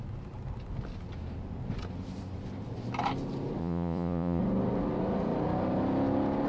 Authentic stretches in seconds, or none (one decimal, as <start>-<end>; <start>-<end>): 0.0-3.6; 4.4-6.5